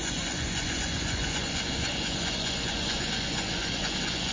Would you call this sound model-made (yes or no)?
yes